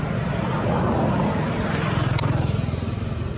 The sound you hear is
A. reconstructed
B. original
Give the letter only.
B